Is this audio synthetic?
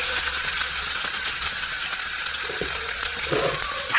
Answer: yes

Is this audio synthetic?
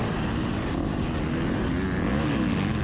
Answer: no